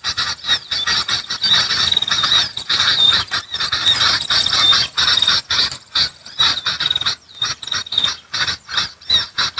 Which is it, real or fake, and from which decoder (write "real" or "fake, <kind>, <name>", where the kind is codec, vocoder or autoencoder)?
real